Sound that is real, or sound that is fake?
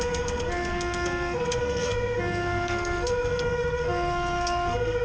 fake